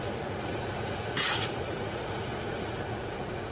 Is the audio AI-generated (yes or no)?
yes